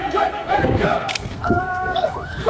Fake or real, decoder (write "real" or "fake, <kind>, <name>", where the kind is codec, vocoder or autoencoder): fake, codec, SNAC